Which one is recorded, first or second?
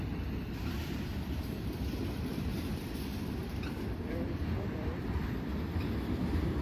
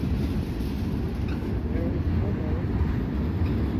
second